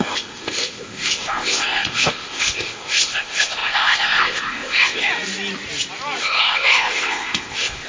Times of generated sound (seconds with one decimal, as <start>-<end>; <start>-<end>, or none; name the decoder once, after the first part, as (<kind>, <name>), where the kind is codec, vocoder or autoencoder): 0.0-5.1 (codec, ZipCodec); 6.2-7.9